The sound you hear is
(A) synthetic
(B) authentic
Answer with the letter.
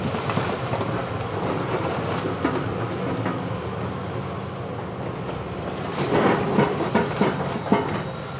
B